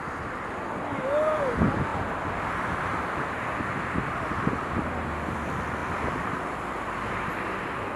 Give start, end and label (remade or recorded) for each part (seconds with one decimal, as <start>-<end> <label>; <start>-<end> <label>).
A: 0.0-2.9 recorded; 2.9-5.0 remade; 5.0-8.0 recorded